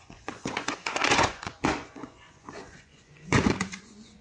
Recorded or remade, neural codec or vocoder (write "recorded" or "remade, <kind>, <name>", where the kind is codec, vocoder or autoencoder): remade, vocoder, Vocos